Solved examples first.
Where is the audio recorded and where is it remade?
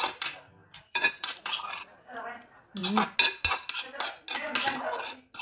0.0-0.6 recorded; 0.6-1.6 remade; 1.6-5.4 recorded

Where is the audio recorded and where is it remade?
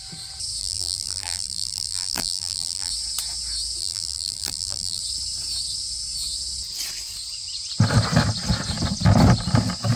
0.0-0.6 recorded; 0.6-2.9 remade; 2.9-3.8 recorded; 3.8-5.0 remade; 5.0-10.0 recorded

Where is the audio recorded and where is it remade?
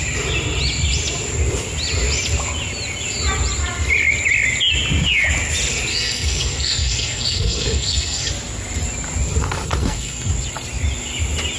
0.0-5.9 recorded; 5.9-8.3 remade; 8.3-9.8 recorded; 9.8-10.3 remade; 10.3-11.6 recorded